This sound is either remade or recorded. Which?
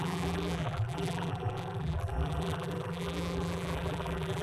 remade